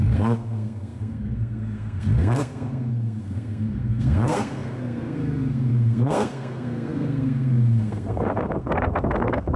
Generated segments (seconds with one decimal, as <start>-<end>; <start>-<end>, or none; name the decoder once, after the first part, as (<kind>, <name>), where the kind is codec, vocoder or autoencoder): 0.0-9.6 (codec, SNAC)